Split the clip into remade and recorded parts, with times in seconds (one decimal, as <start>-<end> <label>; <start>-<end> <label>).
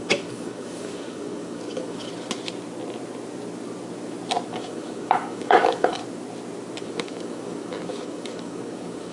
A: 0.0-2.1 remade; 2.1-4.5 recorded; 4.5-6.0 remade; 6.0-6.8 recorded; 6.8-9.1 remade